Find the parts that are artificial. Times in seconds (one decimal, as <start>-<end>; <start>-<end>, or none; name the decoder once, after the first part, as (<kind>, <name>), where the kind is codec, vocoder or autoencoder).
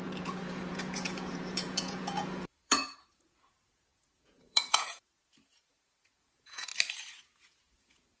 0.0-6.7 (vocoder, Vocos); 7.2-8.2